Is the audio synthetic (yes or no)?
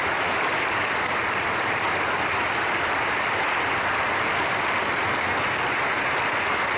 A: no